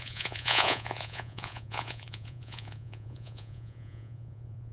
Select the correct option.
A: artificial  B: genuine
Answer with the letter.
A